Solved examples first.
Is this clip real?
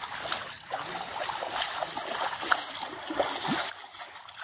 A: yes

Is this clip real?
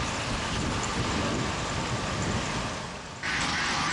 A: yes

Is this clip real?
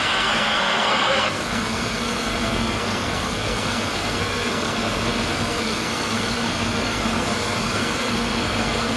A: no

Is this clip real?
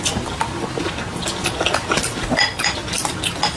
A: yes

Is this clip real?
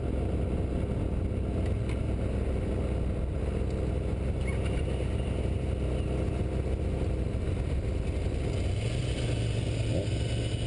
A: yes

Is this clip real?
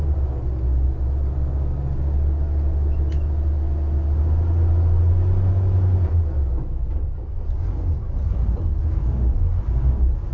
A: yes